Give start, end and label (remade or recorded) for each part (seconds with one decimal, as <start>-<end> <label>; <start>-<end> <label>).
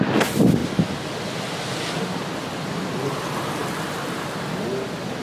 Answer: 0.0-5.2 recorded